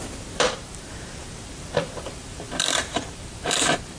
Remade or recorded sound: remade